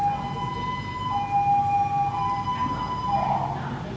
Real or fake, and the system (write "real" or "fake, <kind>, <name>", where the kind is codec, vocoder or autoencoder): real